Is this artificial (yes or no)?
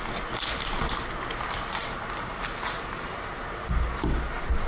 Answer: no